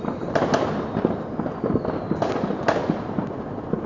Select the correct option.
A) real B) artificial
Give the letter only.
A